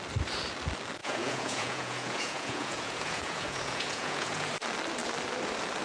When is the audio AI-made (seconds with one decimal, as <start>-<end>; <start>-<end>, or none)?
1.0-4.5